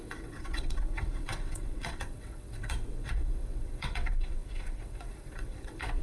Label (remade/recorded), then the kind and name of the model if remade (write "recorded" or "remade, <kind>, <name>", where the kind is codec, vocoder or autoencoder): remade, vocoder, WaveNeXt